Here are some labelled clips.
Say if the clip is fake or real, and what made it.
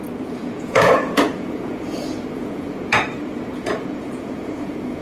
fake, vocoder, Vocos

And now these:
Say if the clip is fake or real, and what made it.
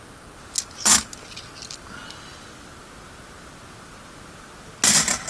real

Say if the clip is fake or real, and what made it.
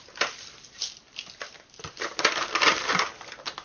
real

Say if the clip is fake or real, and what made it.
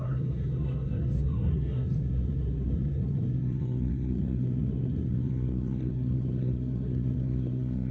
fake, codec, SNAC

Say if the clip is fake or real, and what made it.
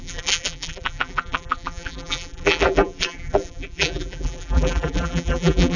fake, vocoder, BigVGAN v2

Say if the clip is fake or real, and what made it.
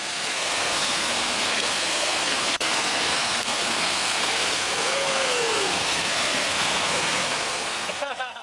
fake, codec, SNAC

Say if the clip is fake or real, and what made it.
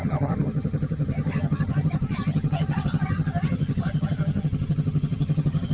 fake, vocoder, HiFi-GAN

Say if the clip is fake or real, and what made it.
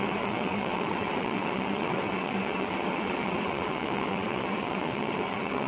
fake, vocoder, WaveNeXt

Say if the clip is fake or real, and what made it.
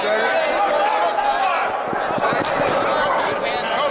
real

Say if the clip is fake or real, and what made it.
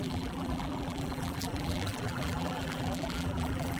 fake, vocoder, BigVGAN v2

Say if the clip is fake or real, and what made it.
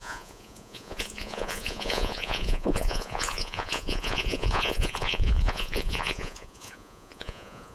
fake, vocoder, Vocos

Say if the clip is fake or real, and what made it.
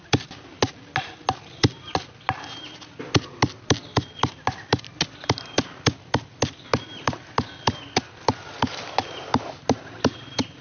real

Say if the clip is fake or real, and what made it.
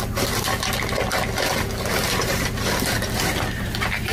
fake, vocoder, BigVGAN v2